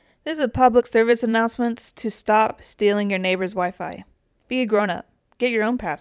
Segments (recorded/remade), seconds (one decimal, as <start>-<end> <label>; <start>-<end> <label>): 0.0-6.0 remade

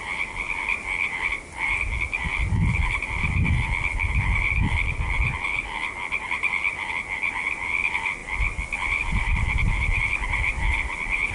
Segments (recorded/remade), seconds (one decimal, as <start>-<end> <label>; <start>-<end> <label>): 0.0-2.3 recorded; 2.3-3.9 remade; 3.9-8.2 recorded; 8.2-11.3 remade

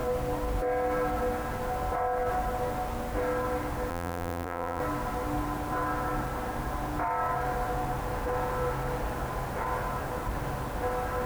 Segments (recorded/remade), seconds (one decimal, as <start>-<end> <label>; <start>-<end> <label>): 0.0-3.9 recorded; 3.9-4.8 remade; 4.8-11.3 recorded